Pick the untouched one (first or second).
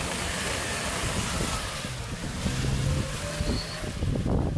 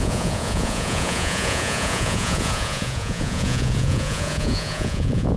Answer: first